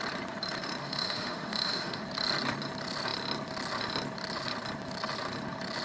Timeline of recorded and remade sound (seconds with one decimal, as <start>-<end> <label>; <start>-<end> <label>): 0.0-0.8 recorded; 0.8-2.0 remade; 2.0-5.8 recorded